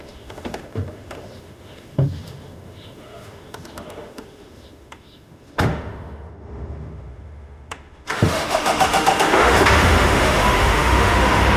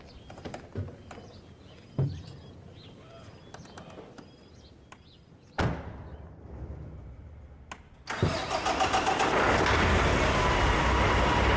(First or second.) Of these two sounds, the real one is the second